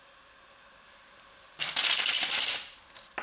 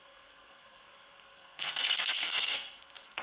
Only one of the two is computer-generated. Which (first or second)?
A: second